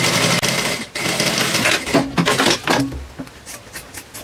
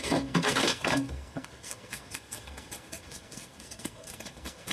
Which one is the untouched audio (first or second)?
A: first